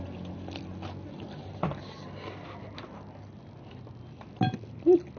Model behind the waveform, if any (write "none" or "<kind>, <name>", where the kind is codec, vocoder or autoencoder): none